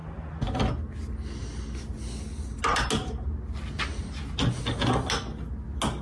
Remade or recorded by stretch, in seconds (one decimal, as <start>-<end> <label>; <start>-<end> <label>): 0.0-6.0 recorded

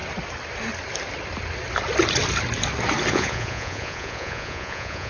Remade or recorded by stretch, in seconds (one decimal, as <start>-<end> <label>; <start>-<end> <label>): 0.0-3.1 recorded; 3.1-5.1 remade

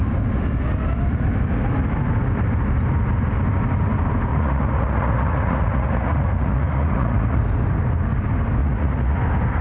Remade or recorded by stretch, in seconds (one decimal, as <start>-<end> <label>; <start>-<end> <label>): 0.0-4.3 recorded; 4.3-7.4 remade; 7.4-8.6 recorded; 8.6-9.2 remade; 9.2-9.6 recorded

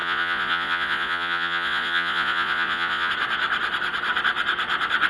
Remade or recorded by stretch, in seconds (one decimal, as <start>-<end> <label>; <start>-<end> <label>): 0.0-3.1 remade; 3.1-5.1 recorded

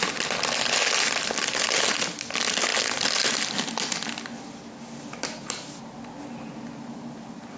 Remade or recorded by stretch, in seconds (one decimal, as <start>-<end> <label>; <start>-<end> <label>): 0.0-7.6 recorded

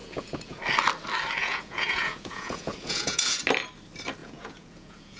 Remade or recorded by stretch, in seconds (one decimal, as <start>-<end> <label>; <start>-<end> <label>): 0.0-0.6 remade; 0.6-1.4 recorded; 1.4-3.4 remade; 3.4-4.2 recorded; 4.2-5.2 remade